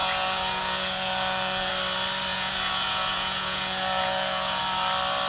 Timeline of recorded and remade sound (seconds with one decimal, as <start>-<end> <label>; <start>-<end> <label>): 0.0-1.7 remade; 1.7-2.3 recorded; 2.3-4.6 remade; 4.6-5.3 recorded